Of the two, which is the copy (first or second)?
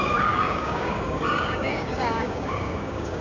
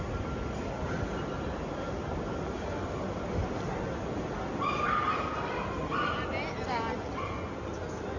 first